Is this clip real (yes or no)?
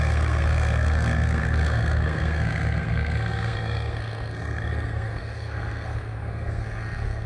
no